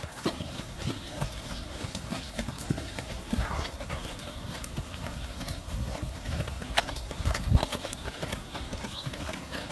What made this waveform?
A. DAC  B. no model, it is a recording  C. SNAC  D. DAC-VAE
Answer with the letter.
C